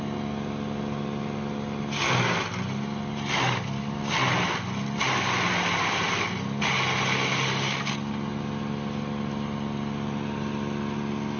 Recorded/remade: recorded